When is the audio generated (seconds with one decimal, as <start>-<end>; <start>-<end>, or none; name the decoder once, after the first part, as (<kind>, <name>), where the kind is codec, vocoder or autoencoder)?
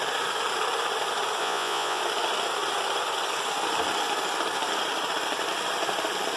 1.4-2.0 (vocoder, Vocos)